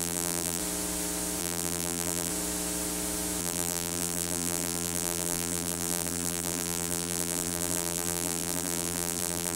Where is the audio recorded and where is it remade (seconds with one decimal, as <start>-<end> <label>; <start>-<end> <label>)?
0.0-0.6 remade; 0.6-1.4 recorded; 1.4-2.3 remade; 2.3-3.4 recorded; 3.4-9.6 remade